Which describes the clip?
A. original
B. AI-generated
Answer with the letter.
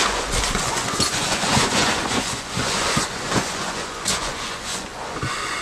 B